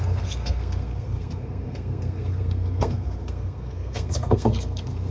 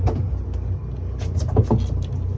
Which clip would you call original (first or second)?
second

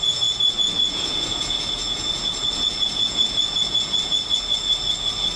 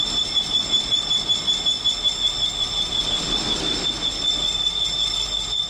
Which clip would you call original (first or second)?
second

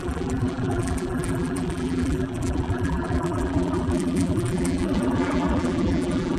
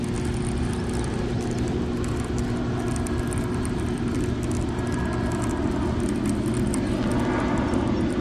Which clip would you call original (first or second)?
second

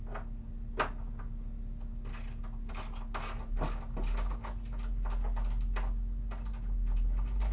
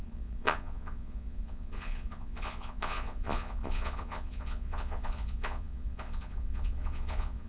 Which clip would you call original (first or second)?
first